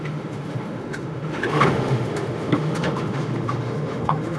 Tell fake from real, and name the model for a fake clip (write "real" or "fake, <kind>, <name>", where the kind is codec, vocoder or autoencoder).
fake, autoencoder, DAC-VAE